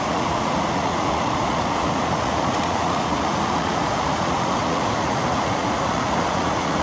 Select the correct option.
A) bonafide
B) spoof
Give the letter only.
B